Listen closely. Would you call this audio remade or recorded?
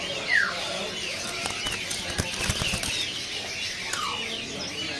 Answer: recorded